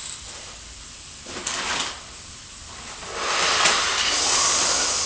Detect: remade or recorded recorded